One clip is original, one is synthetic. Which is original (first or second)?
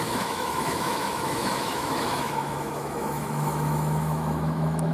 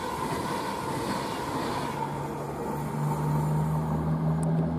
second